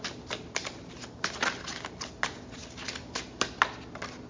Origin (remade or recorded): recorded